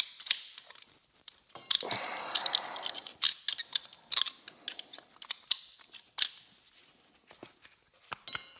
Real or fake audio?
real